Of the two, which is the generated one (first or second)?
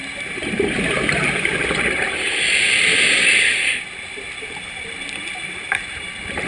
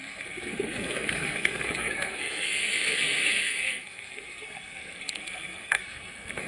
second